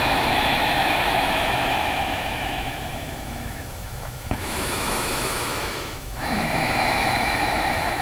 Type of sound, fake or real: fake